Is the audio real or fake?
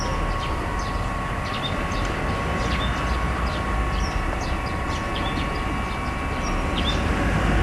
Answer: real